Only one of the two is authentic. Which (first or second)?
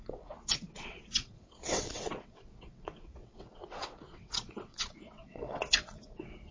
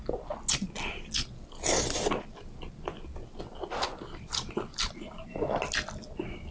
second